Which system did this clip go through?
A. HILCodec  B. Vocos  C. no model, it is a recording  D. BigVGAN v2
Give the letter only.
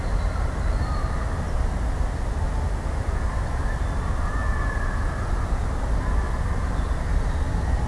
C